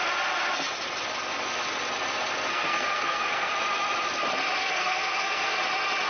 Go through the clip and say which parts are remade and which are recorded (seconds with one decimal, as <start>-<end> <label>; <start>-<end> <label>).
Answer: 0.0-2.5 recorded; 2.5-3.5 remade; 3.5-4.6 recorded; 4.6-5.6 remade; 5.6-6.1 recorded